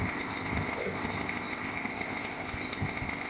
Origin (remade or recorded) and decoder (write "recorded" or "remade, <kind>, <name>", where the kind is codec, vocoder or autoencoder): remade, codec, ZipCodec